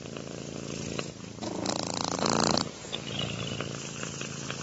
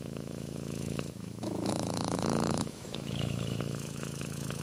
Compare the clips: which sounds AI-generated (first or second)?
second